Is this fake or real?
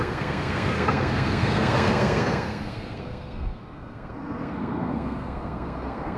fake